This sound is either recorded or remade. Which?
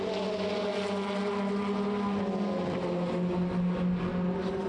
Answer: recorded